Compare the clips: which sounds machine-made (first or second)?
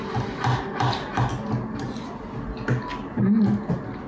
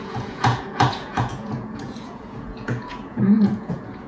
second